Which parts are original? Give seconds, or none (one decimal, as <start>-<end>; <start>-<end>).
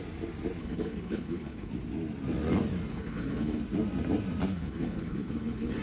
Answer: 0.0-0.6; 1.7-2.9; 3.6-4.5